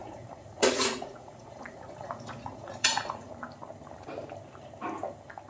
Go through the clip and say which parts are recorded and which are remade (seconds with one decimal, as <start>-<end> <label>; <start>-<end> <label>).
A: 0.0-3.3 remade; 3.3-5.5 recorded